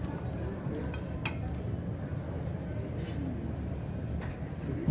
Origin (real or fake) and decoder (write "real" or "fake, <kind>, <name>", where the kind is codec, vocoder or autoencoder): real